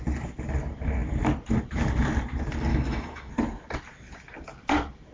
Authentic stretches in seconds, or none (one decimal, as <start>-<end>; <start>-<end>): 0.0-2.7; 3.3-5.1